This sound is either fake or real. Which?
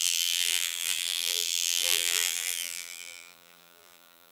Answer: fake